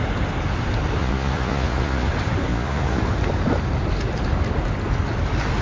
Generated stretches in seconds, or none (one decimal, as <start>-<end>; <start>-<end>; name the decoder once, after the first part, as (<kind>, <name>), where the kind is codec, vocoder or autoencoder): 1.0-2.1 (vocoder, Vocos); 2.5-3.0